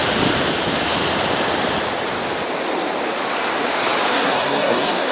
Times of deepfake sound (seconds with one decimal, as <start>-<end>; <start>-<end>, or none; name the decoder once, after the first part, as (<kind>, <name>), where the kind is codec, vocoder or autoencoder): 4.1-5.1 (codec, SNAC)